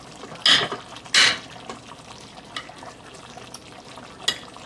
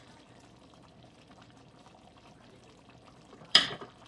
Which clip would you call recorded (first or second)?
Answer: first